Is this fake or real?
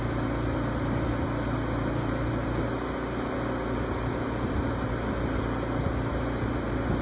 real